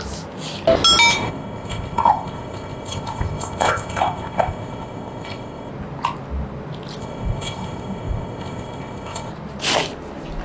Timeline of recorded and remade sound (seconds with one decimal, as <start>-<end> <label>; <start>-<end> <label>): 0.0-1.1 recorded; 1.1-5.7 remade; 5.7-7.0 recorded; 7.0-9.3 remade; 9.3-10.4 recorded